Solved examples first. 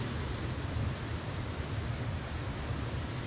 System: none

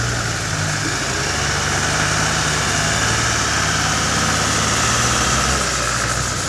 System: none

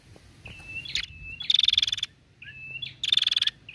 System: none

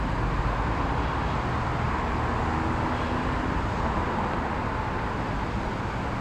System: none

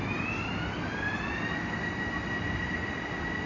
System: none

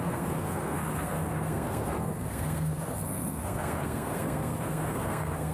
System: codec, SNAC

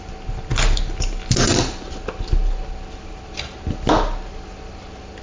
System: none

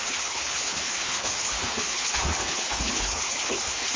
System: codec, HILCodec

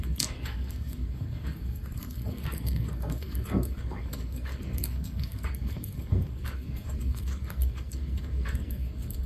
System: codec, SNAC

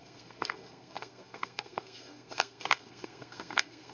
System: codec, SNAC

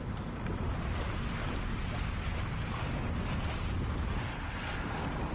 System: none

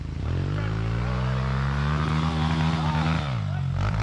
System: none